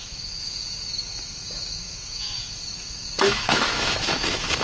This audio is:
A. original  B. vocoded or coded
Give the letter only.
B